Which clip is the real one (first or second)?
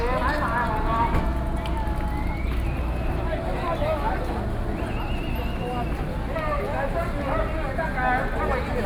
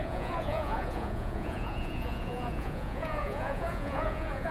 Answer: first